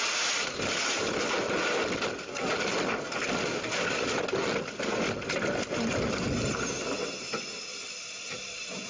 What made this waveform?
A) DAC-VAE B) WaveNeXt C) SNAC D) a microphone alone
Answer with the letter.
D